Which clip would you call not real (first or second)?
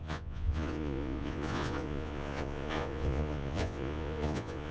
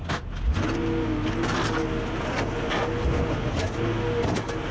first